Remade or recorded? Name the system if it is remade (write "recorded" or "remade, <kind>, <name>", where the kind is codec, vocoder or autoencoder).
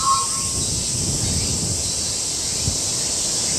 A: recorded